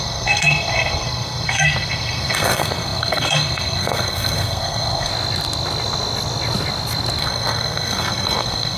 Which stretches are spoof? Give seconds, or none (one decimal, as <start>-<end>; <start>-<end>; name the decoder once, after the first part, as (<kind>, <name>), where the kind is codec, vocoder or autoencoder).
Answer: 0.0-5.1 (codec, SNAC); 7.2-8.8